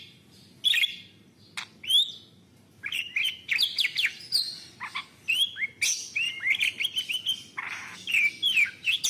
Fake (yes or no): no